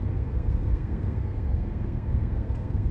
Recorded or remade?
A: remade